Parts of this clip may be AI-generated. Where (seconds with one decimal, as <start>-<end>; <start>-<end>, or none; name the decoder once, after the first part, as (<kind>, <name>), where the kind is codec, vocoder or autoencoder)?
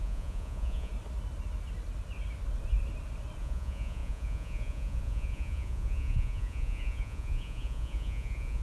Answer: 0.0-0.9 (vocoder, Vocos); 3.4-8.6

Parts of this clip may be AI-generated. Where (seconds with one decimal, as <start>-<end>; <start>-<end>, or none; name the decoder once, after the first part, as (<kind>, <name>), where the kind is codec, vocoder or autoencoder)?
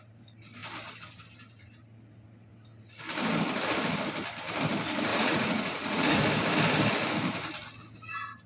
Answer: 5.1-6.2 (vocoder, Vocos)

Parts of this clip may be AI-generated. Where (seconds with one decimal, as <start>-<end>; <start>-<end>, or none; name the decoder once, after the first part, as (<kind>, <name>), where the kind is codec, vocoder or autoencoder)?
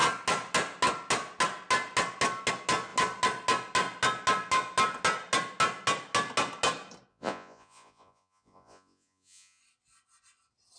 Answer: 7.1-9.6 (vocoder, Vocos)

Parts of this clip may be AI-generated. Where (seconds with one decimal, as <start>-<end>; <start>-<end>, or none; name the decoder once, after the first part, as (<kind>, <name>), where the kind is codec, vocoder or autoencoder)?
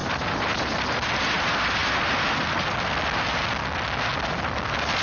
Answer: 0.0-0.7 (vocoder, BigVGAN v2); 1.8-2.9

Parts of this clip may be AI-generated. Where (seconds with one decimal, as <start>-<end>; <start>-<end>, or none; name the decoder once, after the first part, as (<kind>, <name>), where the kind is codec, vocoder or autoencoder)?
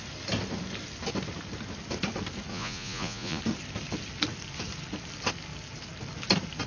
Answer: 2.5-3.4 (vocoder, Vocos)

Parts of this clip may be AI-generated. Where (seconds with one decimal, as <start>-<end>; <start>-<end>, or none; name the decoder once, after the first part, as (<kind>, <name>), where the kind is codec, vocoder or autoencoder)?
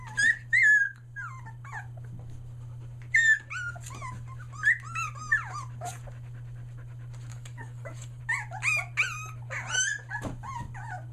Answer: 7.3-8.2 (codec, DAC)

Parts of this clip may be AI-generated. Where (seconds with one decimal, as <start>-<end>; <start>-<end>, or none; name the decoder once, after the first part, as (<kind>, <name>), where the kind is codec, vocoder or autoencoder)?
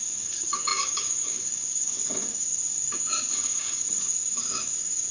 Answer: 0.0-5.1 (codec, DAC)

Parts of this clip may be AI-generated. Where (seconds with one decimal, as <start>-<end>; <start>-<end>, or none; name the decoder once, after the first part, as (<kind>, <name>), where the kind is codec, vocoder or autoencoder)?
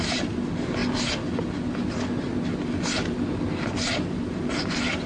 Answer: none